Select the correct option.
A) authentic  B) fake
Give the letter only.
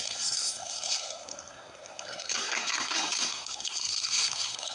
B